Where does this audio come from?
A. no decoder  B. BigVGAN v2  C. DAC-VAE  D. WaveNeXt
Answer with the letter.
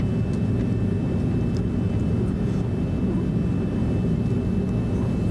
A